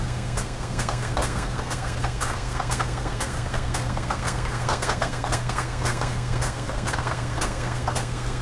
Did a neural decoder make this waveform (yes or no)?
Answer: yes